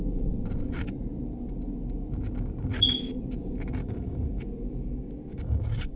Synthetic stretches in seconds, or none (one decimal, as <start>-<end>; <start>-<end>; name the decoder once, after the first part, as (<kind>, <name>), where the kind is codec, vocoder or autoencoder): 3.8-4.4 (codec, DAC); 5.3-6.0